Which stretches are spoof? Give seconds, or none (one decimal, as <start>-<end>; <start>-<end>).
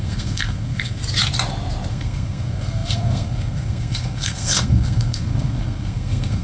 0.0-1.0; 1.9-6.4